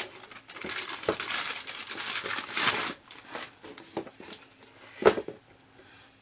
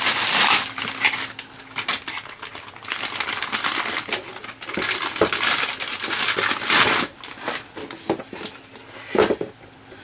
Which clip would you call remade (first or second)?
first